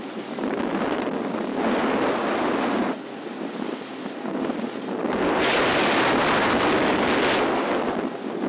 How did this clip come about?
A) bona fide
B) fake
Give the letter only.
A